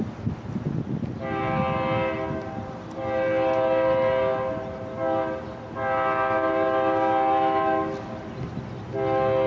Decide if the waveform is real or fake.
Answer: real